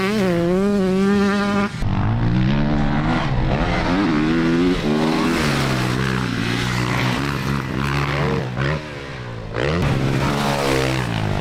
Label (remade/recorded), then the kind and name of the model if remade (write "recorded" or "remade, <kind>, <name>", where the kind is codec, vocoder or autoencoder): recorded